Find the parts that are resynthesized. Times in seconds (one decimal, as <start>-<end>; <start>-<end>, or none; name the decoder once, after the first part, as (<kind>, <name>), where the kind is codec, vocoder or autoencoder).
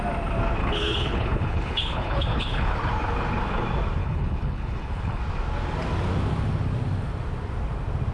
0.6-2.7 (codec, HILCodec); 4.0-5.2